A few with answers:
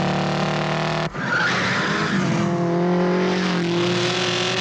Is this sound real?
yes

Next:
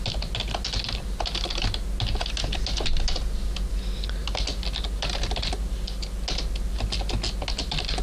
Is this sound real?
yes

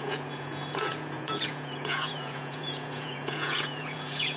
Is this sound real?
no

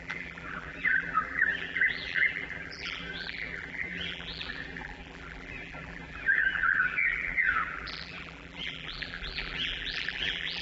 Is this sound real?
no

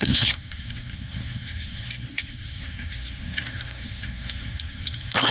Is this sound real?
no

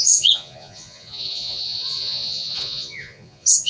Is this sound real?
no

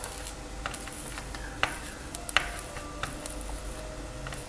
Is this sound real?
yes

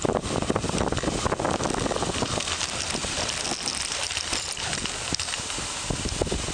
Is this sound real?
yes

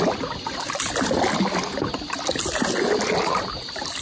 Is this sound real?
yes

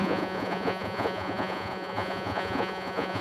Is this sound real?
no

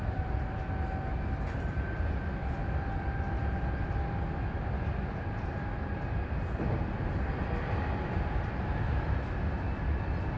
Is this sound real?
yes